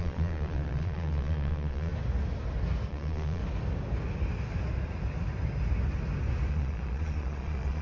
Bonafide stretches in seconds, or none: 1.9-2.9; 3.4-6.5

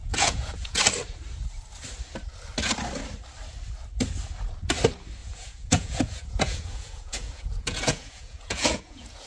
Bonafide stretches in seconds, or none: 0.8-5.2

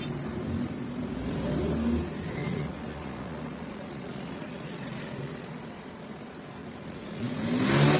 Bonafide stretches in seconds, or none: 0.0-2.4; 5.3-6.6; 7.3-8.0